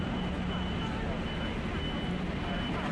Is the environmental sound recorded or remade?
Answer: recorded